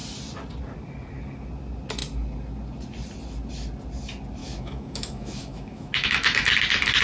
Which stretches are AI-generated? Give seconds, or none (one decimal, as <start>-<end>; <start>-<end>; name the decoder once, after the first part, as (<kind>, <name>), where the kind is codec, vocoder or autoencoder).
4.4-6.5 (autoencoder, DAC-VAE)